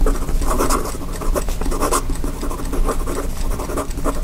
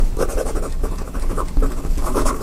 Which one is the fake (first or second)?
second